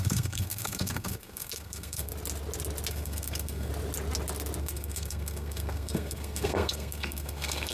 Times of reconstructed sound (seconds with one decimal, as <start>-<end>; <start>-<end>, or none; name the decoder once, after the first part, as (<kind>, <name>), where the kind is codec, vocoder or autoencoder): 0.0-2.1 (codec, SNAC); 2.9-3.7; 4.6-7.7